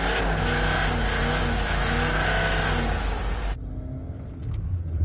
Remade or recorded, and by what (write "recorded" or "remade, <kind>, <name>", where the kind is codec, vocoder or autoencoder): recorded